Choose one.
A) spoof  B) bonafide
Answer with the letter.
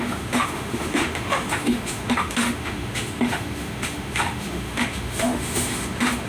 A